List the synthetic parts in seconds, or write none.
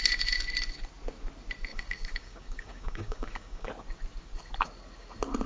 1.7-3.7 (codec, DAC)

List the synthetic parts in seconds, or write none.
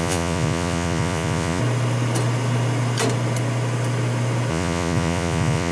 0.0-1.6 (vocoder, Vocos); 4.5-5.7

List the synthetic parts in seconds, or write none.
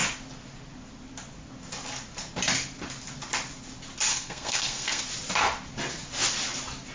4.1-5.0 (codec, SNAC)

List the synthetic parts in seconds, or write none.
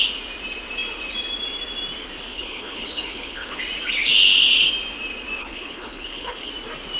2.3-3.6 (codec, HILCodec); 5.4-6.5